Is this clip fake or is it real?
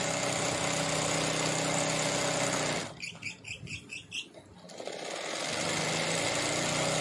real